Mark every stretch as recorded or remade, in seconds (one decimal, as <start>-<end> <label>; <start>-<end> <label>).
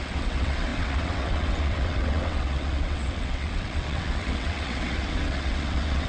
0.0-6.1 remade